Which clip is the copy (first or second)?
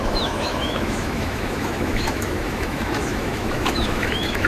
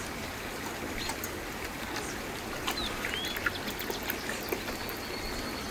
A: first